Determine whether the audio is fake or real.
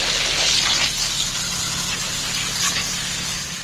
real